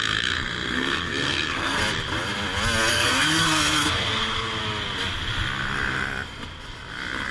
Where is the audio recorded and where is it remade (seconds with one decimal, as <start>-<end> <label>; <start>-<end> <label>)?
0.0-1.8 remade; 1.8-2.9 recorded; 2.9-4.6 remade; 4.6-7.3 recorded

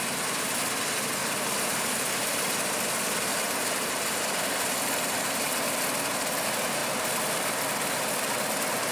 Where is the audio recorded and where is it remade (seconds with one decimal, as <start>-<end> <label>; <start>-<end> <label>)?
0.0-1.2 recorded; 1.2-2.7 remade; 2.7-3.3 recorded; 3.3-3.9 remade; 3.9-8.9 recorded

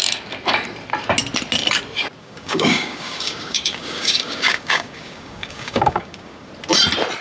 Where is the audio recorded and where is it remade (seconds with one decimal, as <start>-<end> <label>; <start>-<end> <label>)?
0.0-2.2 recorded; 2.2-6.5 remade; 6.5-7.2 recorded

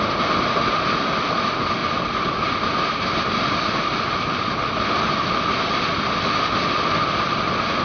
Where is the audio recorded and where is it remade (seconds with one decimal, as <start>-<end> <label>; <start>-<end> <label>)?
0.0-7.8 recorded

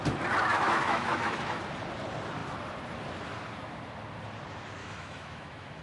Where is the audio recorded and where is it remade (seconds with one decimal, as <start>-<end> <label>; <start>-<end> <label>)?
0.0-0.5 recorded; 0.5-1.6 remade; 1.6-4.8 recorded; 4.8-5.8 remade

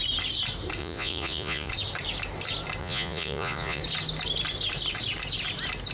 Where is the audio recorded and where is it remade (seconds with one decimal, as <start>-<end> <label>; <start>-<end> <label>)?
0.0-0.8 recorded; 0.8-1.7 remade; 1.7-2.8 recorded; 2.8-3.8 remade; 3.8-5.9 recorded

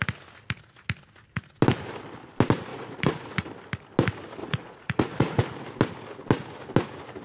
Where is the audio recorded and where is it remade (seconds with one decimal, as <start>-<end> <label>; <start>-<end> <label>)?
0.0-2.7 recorded; 2.7-3.5 remade; 3.5-4.4 recorded; 4.4-5.4 remade; 5.4-7.2 recorded